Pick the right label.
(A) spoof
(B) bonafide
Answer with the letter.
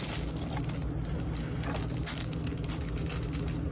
B